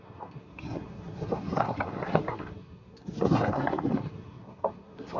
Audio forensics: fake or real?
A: fake